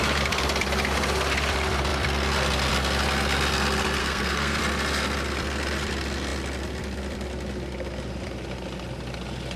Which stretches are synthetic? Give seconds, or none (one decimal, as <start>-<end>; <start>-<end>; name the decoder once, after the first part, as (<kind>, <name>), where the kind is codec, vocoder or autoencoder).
4.0-4.6 (codec, SNAC)